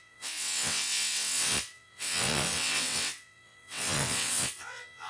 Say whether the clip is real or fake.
fake